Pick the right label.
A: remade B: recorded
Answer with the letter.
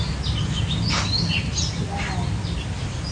B